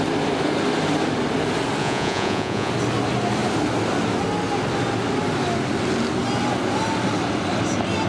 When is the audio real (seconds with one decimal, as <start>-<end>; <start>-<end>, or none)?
0.0-1.8; 2.7-8.1